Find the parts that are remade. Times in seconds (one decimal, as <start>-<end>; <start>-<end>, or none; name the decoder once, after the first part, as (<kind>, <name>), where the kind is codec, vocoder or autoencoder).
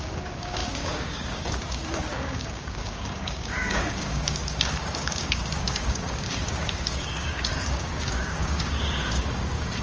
0.0-9.8 (codec, DAC)